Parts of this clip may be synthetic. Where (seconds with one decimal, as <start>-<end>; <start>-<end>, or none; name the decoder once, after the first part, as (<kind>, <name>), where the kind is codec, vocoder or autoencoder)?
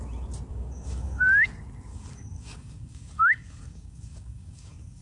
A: 0.5-1.2 (codec, DAC); 1.9-5.0